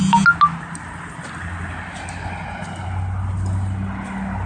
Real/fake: real